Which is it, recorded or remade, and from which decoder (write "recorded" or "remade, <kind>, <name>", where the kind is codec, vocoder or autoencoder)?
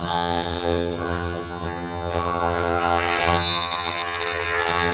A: remade, vocoder, HiFi-GAN